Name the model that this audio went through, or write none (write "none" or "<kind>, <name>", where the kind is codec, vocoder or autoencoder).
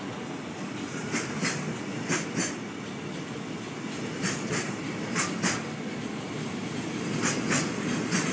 none